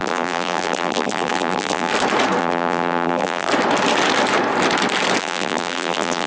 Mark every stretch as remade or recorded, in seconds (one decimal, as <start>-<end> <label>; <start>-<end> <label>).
0.0-1.9 remade; 1.9-2.4 recorded; 2.4-3.5 remade; 3.5-5.2 recorded; 5.2-6.3 remade